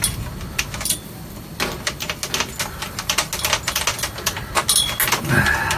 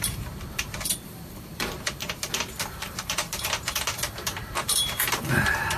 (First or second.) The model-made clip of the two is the second